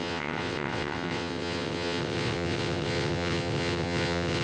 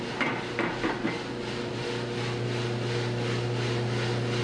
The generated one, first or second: first